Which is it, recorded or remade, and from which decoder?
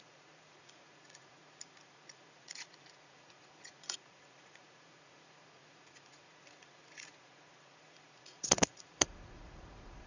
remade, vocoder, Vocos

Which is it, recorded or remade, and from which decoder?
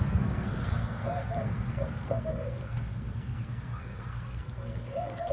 remade, codec, SNAC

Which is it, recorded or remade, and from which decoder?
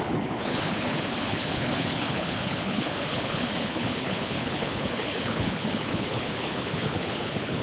remade, codec, HILCodec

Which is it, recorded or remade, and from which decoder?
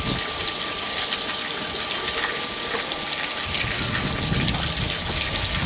recorded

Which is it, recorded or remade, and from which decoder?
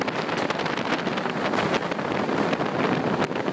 recorded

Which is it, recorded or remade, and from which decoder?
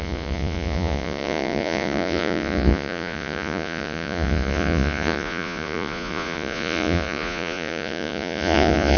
remade, vocoder, Vocos